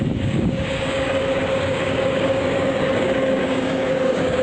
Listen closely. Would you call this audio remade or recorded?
remade